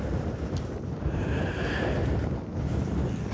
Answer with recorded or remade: recorded